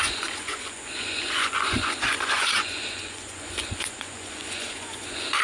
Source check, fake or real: fake